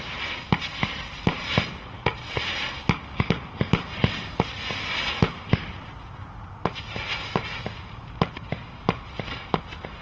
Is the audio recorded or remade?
recorded